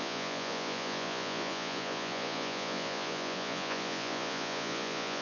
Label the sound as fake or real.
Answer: fake